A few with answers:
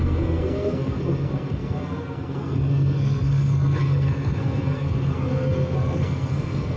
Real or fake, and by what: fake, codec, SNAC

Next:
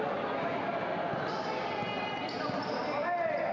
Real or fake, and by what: real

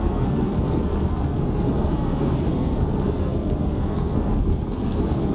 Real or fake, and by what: fake, codec, SNAC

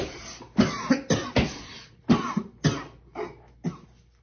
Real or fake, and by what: real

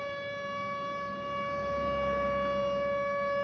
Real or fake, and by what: real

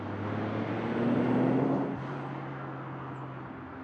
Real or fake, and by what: real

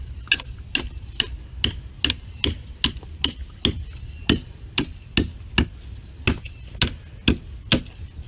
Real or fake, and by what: real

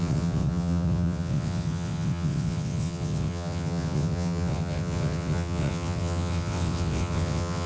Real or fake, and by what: fake, vocoder, WaveNeXt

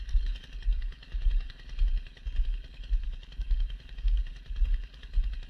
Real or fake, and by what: fake, codec, DAC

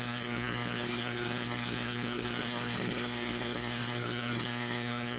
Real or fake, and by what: fake, codec, SNAC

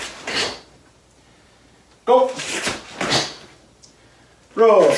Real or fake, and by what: real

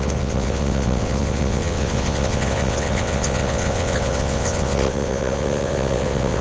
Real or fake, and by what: fake, vocoder, WaveNeXt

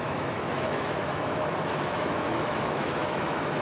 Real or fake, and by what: fake, autoencoder, DAC-VAE